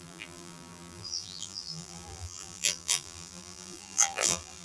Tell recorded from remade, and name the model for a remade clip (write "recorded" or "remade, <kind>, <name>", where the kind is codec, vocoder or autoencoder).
remade, vocoder, BigVGAN v2